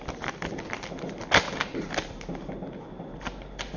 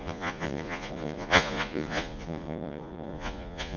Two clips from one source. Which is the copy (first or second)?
second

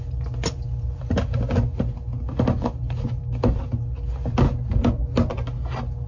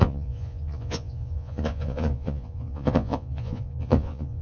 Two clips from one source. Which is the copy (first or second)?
second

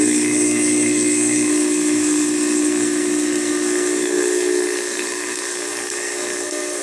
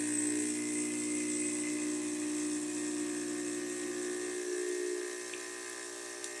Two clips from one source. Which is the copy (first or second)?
first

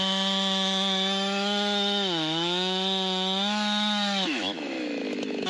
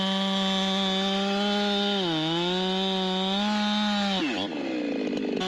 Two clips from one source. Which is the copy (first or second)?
first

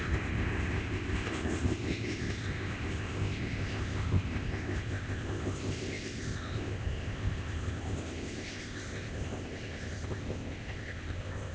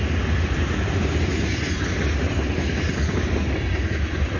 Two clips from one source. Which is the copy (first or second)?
first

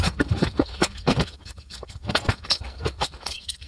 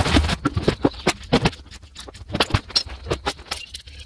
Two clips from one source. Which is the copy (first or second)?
first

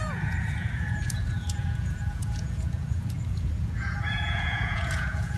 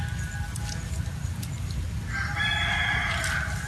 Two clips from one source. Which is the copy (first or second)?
first